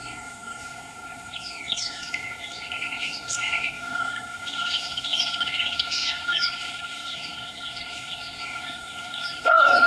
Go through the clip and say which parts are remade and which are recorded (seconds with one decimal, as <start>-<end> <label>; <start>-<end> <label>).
0.0-9.9 remade